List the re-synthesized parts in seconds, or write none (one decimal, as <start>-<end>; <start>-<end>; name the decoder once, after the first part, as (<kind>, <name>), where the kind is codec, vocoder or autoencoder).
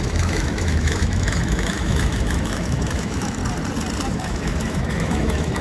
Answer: 0.0-3.4 (autoencoder, DAC-VAE); 4.1-5.6